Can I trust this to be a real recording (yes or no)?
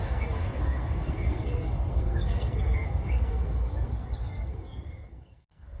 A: no